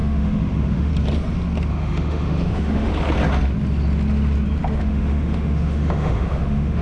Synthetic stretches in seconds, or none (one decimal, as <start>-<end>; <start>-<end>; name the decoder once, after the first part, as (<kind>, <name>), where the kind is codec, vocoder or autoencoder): 0.0-0.9 (autoencoder, DAC-VAE); 1.7-2.9; 4.8-6.8

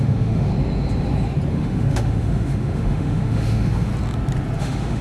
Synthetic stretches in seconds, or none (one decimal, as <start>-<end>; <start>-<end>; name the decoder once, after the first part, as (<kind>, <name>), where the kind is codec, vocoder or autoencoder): 0.0-0.5 (autoencoder, DAC-VAE); 1.5-3.9; 4.6-5.0